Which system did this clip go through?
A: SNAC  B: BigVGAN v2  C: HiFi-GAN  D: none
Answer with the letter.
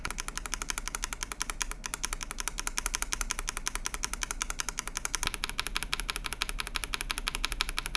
D